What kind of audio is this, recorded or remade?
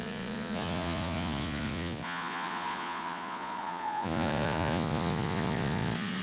remade